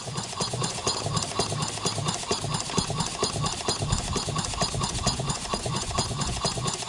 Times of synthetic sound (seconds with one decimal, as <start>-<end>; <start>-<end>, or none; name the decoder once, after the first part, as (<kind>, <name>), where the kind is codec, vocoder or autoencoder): 0.0-0.8 (vocoder, Vocos); 4.8-6.9